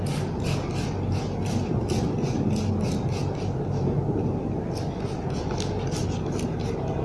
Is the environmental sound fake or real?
real